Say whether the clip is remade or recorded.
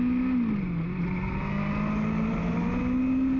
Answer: recorded